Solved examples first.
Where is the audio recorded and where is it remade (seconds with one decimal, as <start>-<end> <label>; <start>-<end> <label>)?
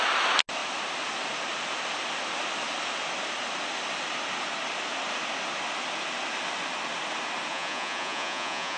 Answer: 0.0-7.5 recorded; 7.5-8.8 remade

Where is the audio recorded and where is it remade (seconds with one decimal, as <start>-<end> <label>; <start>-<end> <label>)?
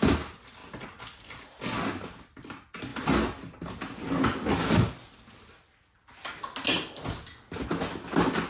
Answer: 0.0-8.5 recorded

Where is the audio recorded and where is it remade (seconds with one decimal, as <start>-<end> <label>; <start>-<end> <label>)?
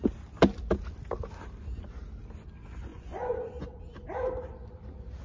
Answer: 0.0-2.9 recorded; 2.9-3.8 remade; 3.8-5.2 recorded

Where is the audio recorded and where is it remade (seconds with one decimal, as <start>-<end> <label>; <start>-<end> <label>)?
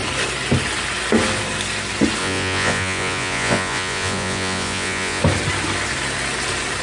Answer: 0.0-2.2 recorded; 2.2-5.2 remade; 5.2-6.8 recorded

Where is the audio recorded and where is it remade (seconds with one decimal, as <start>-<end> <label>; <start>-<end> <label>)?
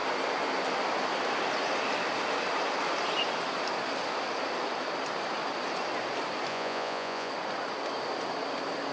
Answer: 0.0-6.5 recorded; 6.5-7.3 remade; 7.3-8.9 recorded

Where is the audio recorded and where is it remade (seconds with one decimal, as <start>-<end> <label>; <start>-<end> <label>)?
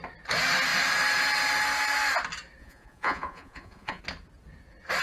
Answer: 0.0-2.6 recorded; 2.6-4.0 remade; 4.0-5.0 recorded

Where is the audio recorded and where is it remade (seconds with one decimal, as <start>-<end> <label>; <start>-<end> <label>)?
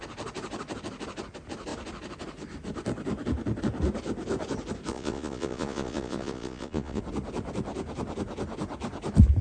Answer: 0.0-4.9 recorded; 4.9-7.0 remade; 7.0-9.4 recorded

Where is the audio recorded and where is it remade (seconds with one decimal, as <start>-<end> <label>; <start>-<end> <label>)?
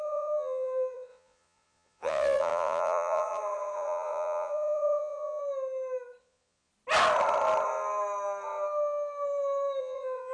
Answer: 0.0-5.4 remade; 5.4-6.2 recorded; 6.2-6.7 remade; 6.7-9.8 recorded; 9.8-10.3 remade